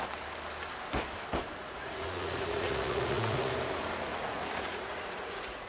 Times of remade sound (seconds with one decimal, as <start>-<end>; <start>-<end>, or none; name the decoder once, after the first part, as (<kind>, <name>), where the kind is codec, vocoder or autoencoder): 1.6-3.5 (vocoder, Vocos); 4.1-5.7